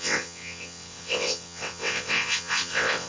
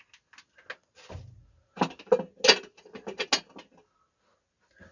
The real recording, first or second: second